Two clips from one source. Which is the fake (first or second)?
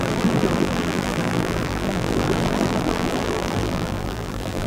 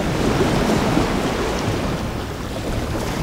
first